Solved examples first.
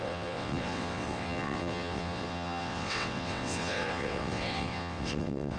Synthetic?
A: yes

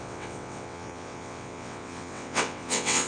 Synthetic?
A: yes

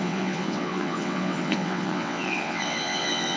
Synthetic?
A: yes